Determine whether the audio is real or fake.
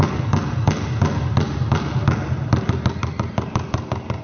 real